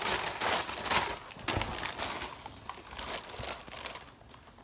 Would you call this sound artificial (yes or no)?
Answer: no